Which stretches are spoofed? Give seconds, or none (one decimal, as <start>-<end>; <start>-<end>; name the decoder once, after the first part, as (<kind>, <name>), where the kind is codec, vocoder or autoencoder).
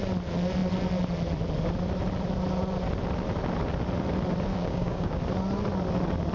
4.5-5.2 (codec, DAC)